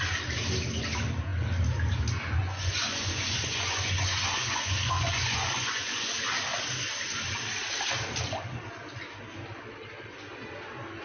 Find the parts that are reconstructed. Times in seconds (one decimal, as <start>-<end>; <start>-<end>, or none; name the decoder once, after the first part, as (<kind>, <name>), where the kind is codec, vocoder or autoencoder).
2.4-6.1 (vocoder, Vocos)